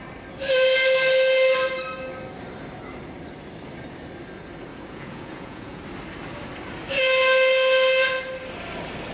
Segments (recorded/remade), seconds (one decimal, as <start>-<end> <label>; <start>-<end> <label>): 0.0-4.7 recorded; 4.7-5.8 remade; 5.8-9.1 recorded